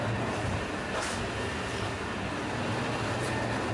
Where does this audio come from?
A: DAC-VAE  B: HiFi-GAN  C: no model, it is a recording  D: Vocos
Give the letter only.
C